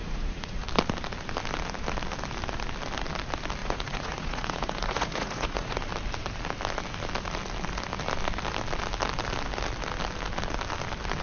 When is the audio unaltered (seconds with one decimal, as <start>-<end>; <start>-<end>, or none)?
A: 0.7-3.6; 5.8-11.2